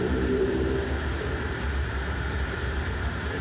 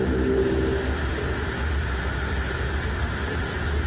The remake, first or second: first